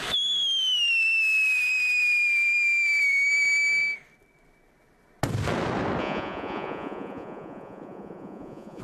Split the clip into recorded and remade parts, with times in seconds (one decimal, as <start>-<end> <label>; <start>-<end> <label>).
0.0-6.0 recorded; 6.0-8.8 remade